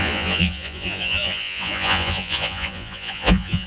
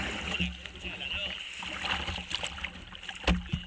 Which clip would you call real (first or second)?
second